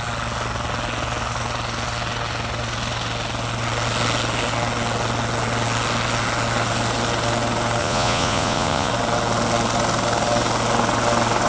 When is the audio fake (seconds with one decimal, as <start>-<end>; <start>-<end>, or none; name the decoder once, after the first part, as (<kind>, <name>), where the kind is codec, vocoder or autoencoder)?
7.8-8.9 (vocoder, Vocos)